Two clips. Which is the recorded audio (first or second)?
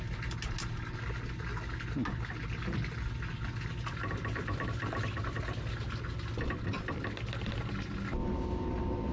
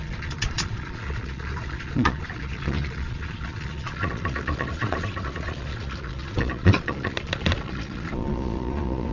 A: first